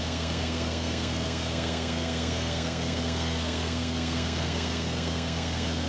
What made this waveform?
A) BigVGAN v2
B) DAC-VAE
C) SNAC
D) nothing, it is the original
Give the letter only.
C